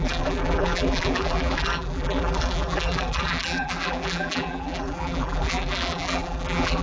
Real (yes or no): no